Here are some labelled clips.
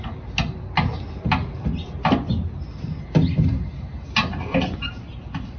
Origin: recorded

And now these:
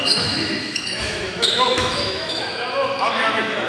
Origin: remade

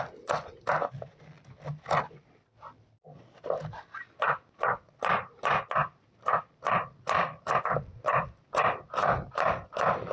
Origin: recorded